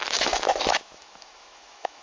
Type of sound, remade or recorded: remade